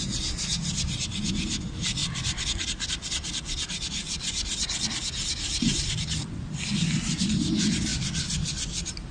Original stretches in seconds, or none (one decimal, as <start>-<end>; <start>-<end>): 0.0-9.1